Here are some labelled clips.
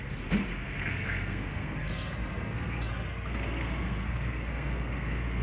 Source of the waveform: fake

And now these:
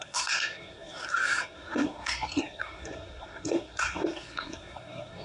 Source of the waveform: fake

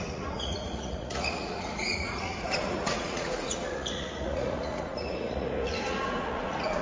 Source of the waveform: fake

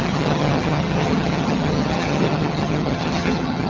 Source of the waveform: fake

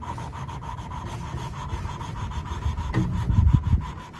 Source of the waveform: real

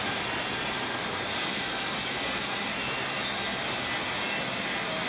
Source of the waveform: real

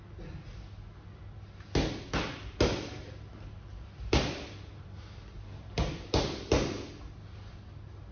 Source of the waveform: real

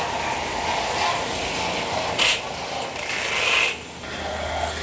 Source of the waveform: real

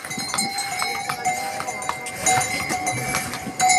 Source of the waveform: real